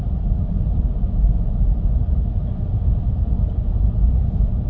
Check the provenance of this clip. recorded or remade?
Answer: remade